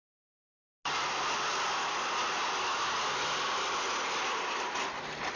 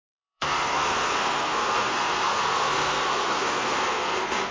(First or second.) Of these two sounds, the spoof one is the second